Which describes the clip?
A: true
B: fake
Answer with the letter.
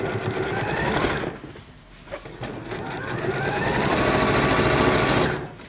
A